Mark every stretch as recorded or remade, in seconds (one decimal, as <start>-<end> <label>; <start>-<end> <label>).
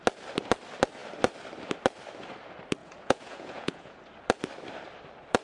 0.0-2.8 recorded; 2.8-4.0 remade; 4.0-5.4 recorded